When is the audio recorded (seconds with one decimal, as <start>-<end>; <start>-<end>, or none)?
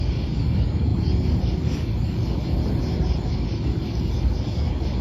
2.6-3.3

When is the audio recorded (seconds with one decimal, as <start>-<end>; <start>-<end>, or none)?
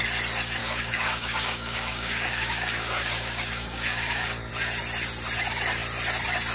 0.0-0.6; 4.5-6.5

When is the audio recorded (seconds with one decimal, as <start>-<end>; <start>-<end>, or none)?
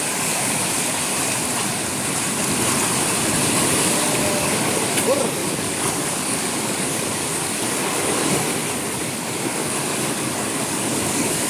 1.1-4.2; 8.5-9.0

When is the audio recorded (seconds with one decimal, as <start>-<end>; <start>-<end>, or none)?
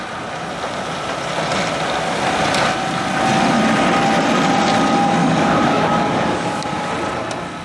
0.0-5.2; 6.9-7.6